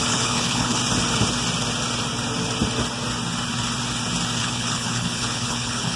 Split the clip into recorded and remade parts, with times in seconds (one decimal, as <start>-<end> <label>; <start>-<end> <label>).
0.0-0.8 remade; 0.8-4.4 recorded; 4.4-6.0 remade